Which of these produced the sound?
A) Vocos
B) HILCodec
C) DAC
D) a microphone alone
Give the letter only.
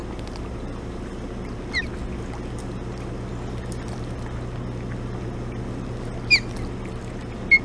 D